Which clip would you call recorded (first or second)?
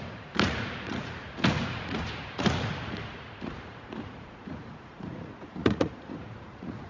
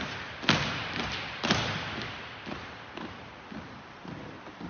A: second